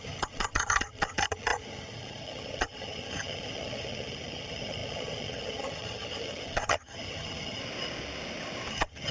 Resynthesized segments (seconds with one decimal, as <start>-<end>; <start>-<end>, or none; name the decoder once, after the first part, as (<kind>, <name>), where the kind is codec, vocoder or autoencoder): 0.0-7.6 (vocoder, HiFi-GAN); 8.7-9.1